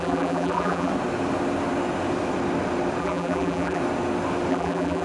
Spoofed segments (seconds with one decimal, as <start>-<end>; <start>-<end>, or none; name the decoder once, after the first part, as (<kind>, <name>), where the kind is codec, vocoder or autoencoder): 0.0-0.9 (vocoder, BigVGAN v2); 3.0-3.8; 4.5-5.0